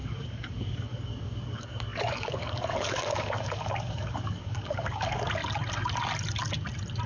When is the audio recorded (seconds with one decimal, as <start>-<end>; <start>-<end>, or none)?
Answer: 5.4-7.1